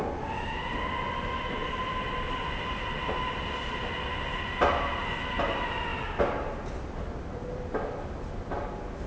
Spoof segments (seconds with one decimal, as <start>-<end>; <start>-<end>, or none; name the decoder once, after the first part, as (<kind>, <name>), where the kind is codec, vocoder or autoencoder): 1.6-3.3 (vocoder, BigVGAN v2); 5.9-7.7